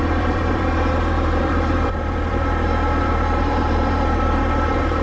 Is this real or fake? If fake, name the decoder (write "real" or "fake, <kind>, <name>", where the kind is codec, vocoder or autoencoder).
fake, vocoder, BigVGAN v2